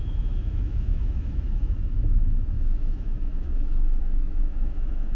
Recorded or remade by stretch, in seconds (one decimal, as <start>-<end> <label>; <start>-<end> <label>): 0.0-5.2 remade